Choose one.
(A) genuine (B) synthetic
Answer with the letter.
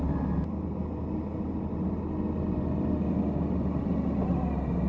A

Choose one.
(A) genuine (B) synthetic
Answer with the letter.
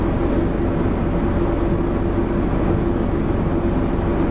A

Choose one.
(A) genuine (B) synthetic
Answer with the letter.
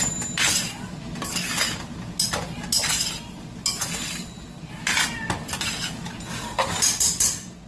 A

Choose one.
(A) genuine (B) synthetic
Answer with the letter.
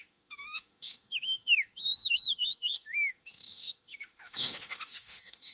B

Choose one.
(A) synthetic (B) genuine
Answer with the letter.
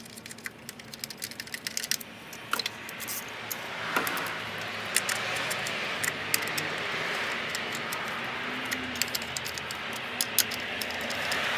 B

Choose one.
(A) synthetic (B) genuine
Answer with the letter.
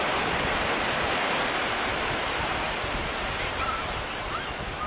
B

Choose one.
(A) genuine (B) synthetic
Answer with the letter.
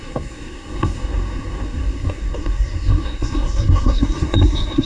B